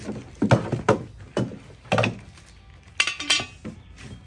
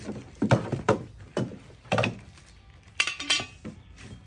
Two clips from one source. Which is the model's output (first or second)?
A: second